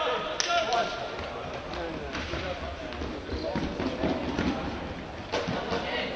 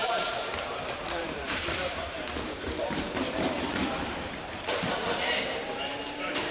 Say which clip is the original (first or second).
first